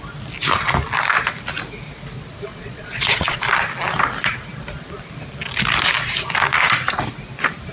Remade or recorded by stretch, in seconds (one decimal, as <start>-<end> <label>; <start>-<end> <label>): 0.0-2.5 recorded; 2.5-3.4 remade; 3.4-7.7 recorded